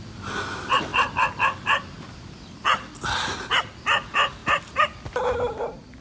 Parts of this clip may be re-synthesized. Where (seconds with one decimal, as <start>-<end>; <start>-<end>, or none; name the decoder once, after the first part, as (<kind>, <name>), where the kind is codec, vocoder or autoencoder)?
none